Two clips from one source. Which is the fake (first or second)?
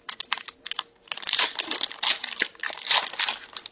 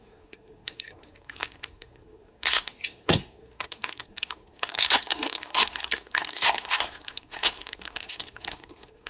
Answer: second